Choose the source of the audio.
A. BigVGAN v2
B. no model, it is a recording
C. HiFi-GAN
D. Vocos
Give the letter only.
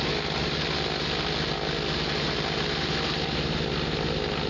B